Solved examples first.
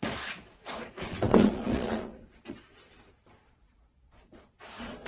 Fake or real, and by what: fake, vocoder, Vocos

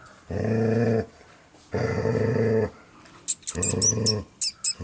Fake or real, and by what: real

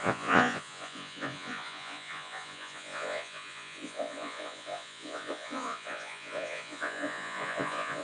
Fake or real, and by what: fake, vocoder, Vocos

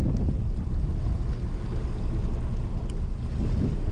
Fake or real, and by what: real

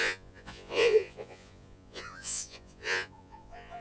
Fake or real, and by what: fake, vocoder, Vocos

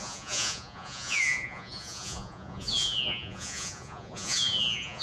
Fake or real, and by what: fake, vocoder, Vocos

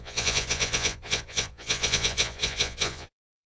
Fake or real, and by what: fake, vocoder, Vocos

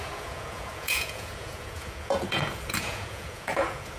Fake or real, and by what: fake, vocoder, Vocos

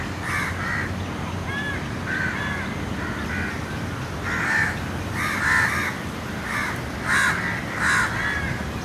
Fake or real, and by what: real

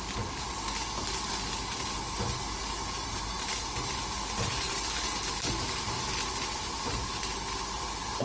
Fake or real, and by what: real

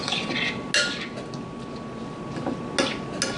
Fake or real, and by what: real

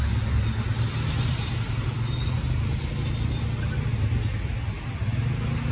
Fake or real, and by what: real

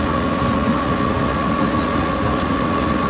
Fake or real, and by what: fake, vocoder, Vocos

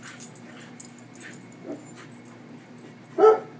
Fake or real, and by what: real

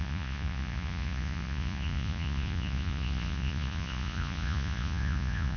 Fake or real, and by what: fake, vocoder, Vocos